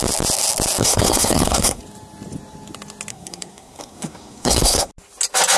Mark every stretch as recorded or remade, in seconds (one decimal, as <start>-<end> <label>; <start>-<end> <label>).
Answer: 0.0-0.8 recorded; 0.8-1.8 remade; 1.8-3.1 recorded; 3.1-4.9 remade; 4.9-5.6 recorded

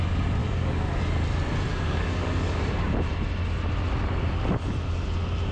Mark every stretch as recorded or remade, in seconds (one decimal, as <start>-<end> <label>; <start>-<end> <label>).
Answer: 0.0-0.4 recorded; 0.4-1.0 remade; 1.0-1.7 recorded; 1.7-2.6 remade; 2.6-5.5 recorded

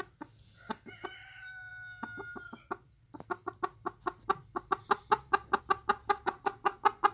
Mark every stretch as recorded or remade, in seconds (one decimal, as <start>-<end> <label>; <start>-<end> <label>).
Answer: 0.0-7.1 recorded

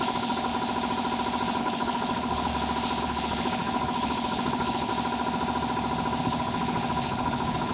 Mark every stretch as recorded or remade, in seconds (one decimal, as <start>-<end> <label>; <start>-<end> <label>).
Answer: 0.0-0.5 remade; 0.5-1.6 recorded; 1.6-2.5 remade; 2.5-3.0 recorded; 3.0-4.9 remade; 4.9-6.2 recorded; 6.2-7.7 remade

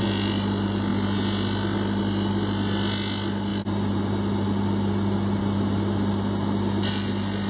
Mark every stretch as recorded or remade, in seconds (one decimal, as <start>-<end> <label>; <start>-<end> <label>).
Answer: 0.0-7.5 recorded